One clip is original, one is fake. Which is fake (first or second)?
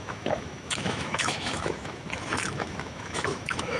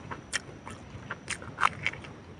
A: first